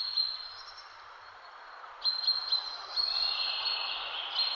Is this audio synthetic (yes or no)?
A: no